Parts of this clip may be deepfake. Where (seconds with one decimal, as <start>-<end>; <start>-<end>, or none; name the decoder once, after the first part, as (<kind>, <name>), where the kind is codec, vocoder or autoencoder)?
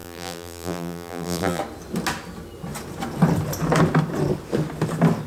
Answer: 0.0-1.6 (vocoder, BigVGAN v2)